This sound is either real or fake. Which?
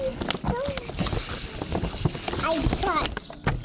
real